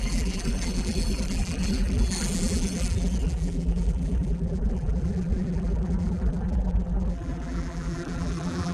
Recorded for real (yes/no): no